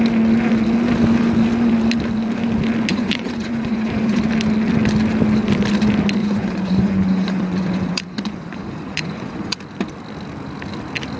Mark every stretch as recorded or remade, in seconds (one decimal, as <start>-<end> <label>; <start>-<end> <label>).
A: 0.0-2.9 recorded; 2.9-4.2 remade; 4.2-6.2 recorded; 6.2-9.6 remade; 9.6-11.2 recorded